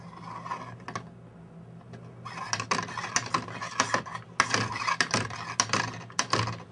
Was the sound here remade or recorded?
recorded